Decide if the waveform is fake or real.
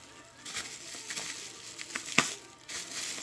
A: real